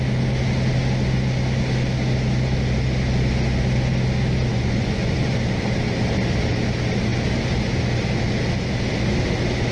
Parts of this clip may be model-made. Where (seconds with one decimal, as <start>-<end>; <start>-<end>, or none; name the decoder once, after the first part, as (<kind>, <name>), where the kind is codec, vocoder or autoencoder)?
4.5-5.3 (vocoder, Vocos)